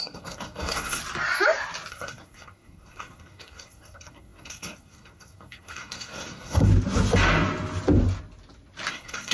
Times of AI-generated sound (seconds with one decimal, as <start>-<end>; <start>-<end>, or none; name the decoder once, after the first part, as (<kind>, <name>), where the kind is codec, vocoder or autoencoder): 0.0-1.0 (codec, SNAC); 1.9-6.7; 8.9-9.3